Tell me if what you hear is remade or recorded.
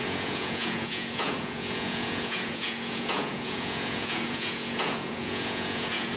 remade